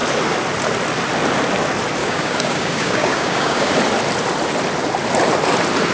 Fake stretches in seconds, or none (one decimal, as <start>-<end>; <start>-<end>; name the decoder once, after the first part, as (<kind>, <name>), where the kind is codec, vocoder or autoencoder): 2.0-3.7 (codec, DAC)